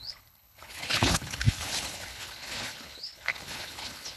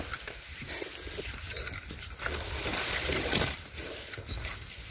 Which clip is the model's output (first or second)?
first